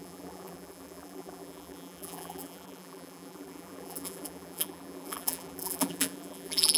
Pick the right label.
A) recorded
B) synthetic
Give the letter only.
B